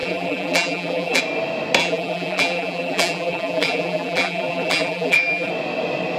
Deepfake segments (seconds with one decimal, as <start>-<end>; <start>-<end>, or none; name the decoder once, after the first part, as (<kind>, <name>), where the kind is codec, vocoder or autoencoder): 0.0-1.2 (vocoder, BigVGAN v2); 1.8-5.5